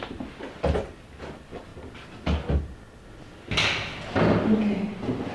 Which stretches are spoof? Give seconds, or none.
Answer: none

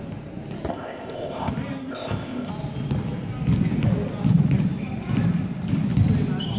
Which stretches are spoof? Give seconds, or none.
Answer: 0.7-1.5 (codec, ZipCodec); 1.9-2.5

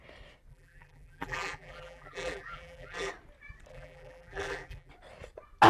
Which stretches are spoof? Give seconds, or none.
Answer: 0.5-3.1 (vocoder, BigVGAN v2); 3.7-4.9

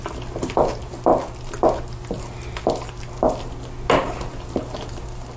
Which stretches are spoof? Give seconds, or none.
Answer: none

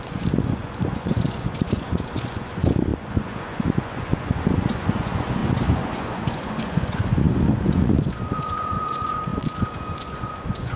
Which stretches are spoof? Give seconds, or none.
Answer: 0.0-10.8 (vocoder, Vocos)